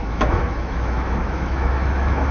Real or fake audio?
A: fake